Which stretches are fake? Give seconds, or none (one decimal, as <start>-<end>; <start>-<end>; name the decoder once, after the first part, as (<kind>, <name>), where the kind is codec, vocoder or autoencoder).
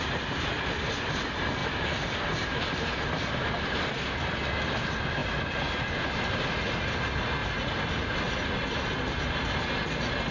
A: 1.6-3.8 (vocoder, BigVGAN v2)